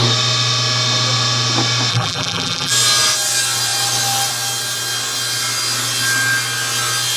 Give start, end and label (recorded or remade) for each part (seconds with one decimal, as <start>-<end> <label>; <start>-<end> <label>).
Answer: 0.0-1.9 recorded; 1.9-2.7 remade; 2.7-7.2 recorded

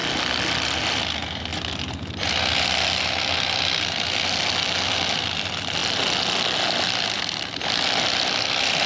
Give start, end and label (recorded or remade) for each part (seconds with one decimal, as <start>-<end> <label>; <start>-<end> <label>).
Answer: 0.0-1.0 remade; 1.0-1.5 recorded; 1.5-2.3 remade; 2.3-8.9 recorded